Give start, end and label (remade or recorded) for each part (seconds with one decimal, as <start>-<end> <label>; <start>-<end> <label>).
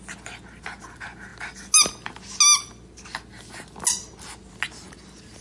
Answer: 0.0-5.4 recorded